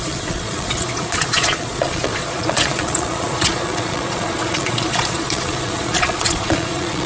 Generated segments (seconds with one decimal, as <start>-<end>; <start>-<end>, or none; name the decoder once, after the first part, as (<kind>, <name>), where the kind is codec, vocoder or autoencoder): 0.0-7.1 (vocoder, Vocos)